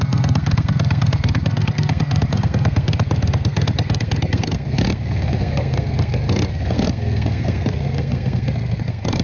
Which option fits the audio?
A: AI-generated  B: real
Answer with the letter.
A